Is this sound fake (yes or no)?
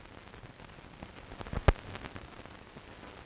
no